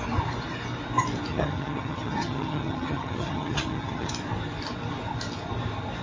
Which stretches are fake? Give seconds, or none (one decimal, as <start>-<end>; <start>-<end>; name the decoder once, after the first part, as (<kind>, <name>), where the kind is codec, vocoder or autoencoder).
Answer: 1.3-4.1 (vocoder, HiFi-GAN)

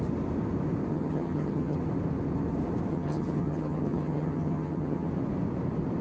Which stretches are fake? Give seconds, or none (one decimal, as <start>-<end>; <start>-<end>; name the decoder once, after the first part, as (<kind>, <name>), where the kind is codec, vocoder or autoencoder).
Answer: 0.9-1.8 (vocoder, HiFi-GAN); 2.9-5.1

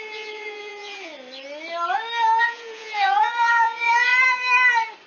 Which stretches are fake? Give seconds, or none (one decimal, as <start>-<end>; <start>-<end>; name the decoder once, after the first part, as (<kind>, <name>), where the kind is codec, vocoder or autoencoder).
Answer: 0.0-1.1 (vocoder, Vocos); 2.4-4.1

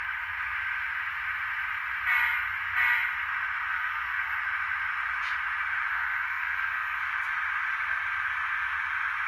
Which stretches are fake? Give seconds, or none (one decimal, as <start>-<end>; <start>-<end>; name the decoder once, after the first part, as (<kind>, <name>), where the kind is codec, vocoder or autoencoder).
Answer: 3.7-4.4 (codec, SNAC); 5.9-7.0